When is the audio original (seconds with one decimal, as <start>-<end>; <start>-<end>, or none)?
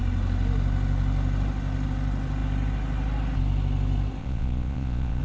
0.0-4.2